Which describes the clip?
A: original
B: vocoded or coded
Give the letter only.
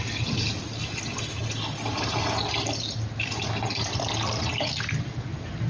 A